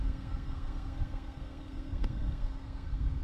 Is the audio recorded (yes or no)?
no